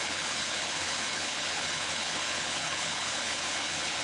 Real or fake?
fake